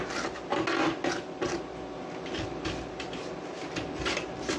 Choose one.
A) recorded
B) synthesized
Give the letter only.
A